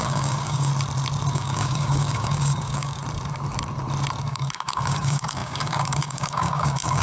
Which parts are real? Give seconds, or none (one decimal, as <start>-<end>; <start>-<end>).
0.7-1.3; 3.0-4.2